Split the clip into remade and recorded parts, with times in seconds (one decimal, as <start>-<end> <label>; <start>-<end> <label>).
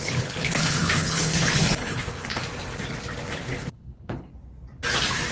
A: 0.0-2.4 remade; 2.4-3.3 recorded; 3.3-4.3 remade; 4.3-5.3 recorded